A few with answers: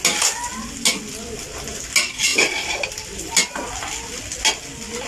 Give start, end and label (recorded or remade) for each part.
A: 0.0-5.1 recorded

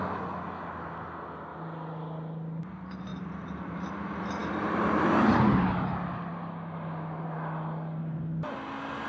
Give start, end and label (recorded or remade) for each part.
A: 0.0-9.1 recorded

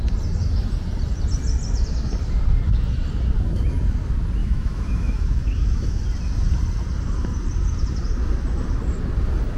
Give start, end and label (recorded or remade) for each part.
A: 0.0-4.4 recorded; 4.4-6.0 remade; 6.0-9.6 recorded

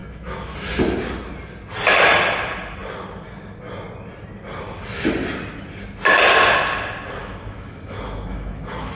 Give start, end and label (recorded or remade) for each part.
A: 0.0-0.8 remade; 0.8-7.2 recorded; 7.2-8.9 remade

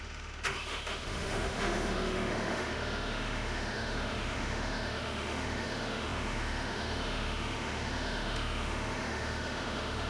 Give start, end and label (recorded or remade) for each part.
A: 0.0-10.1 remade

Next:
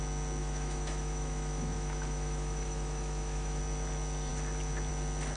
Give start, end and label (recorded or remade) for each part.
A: 0.0-0.4 recorded; 0.4-3.6 remade; 3.6-5.4 recorded